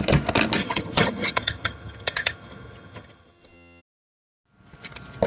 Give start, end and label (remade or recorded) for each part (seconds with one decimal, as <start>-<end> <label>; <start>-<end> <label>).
0.0-0.6 recorded; 0.6-3.8 remade; 3.8-5.3 recorded